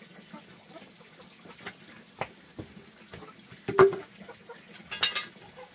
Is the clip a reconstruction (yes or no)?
no